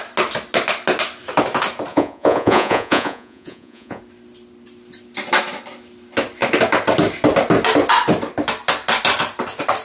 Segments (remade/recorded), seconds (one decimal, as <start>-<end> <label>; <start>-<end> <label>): 0.0-1.9 recorded; 1.9-4.0 remade; 4.0-9.8 recorded